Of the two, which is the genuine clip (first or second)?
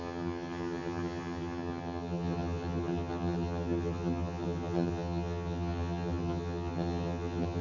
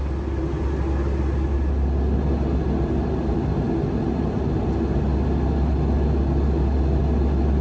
second